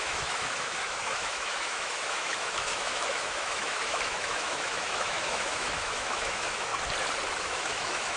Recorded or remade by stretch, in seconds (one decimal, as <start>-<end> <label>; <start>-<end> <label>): 0.0-6.7 remade; 6.7-7.4 recorded; 7.4-8.2 remade